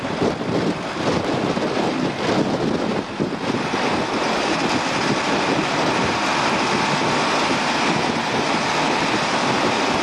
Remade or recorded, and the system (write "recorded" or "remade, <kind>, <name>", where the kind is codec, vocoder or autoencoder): recorded